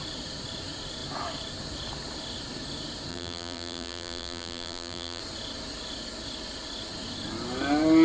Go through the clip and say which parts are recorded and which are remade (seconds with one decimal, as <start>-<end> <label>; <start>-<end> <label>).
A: 0.0-3.1 recorded; 3.1-5.2 remade; 5.2-8.0 recorded